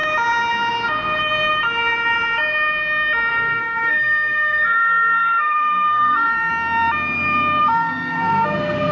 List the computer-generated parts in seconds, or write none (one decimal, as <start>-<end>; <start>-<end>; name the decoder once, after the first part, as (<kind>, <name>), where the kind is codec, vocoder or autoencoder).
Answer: 3.3-6.5 (codec, SNAC); 7.6-8.9